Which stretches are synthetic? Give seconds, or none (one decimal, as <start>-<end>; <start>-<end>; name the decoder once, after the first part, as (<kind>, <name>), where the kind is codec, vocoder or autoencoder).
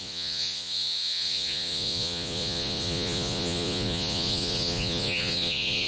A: 0.0-5.9 (vocoder, Vocos)